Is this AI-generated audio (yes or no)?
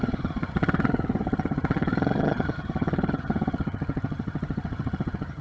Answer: yes